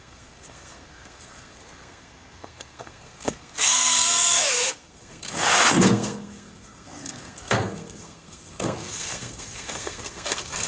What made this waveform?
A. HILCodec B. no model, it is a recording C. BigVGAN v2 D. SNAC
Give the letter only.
D